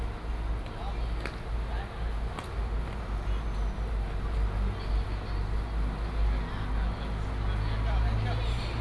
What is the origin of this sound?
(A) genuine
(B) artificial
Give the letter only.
A